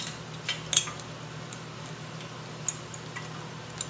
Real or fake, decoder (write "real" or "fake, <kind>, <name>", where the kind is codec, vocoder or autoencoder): real